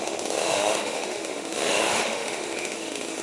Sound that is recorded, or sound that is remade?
remade